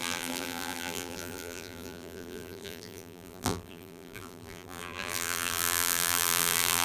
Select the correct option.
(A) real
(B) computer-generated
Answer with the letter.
B